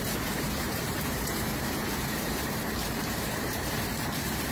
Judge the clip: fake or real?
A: fake